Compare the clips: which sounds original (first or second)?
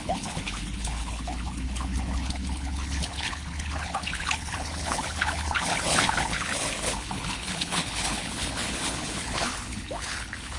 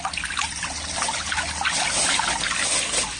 second